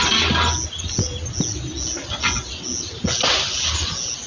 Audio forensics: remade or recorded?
recorded